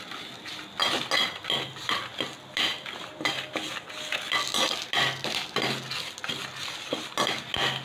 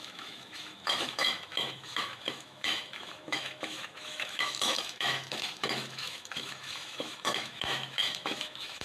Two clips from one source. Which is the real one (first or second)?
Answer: first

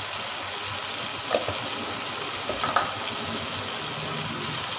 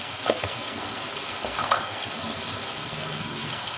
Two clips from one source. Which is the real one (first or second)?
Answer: first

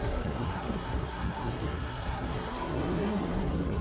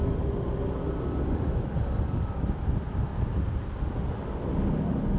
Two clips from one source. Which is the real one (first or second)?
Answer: second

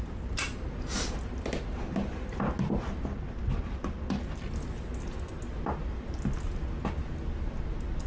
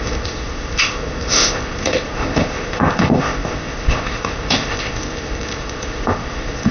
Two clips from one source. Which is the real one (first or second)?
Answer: first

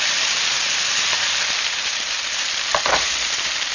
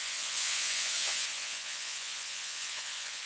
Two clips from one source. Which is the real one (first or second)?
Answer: first